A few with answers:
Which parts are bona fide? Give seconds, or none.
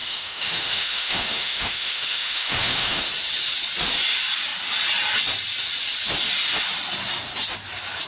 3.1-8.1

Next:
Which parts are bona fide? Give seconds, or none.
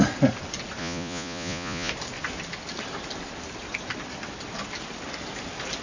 0.0-0.8; 1.9-5.8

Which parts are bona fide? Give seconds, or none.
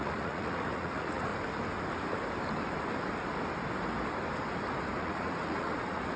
1.3-5.0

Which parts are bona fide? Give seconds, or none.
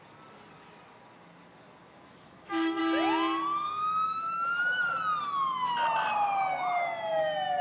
0.0-1.8; 2.8-3.8; 4.8-7.6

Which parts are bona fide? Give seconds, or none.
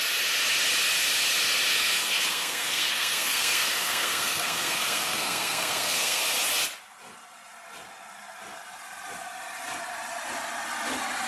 0.0-1.7; 6.2-11.3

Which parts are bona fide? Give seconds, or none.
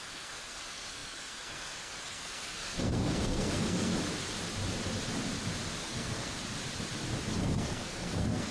3.9-5.8; 6.4-7.4